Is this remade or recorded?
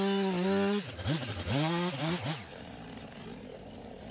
recorded